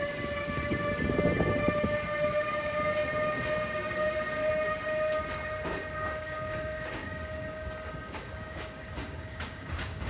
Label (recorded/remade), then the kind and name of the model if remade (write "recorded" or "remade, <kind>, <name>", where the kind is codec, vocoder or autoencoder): remade, codec, DAC